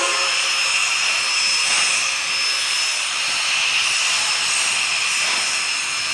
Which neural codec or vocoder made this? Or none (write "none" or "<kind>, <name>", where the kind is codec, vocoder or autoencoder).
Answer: none